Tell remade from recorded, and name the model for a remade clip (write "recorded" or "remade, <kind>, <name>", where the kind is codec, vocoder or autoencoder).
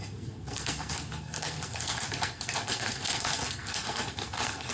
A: remade, codec, SNAC